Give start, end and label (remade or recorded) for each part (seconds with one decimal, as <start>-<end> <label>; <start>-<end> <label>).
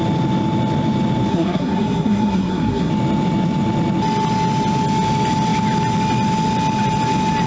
0.0-1.3 recorded; 1.3-2.9 remade; 2.9-7.5 recorded